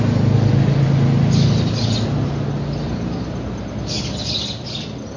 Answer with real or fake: real